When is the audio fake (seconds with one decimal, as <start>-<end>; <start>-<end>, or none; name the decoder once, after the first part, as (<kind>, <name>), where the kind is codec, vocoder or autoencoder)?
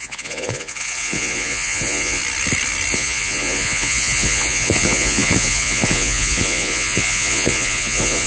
0.0-2.2 (vocoder, Vocos); 2.9-8.3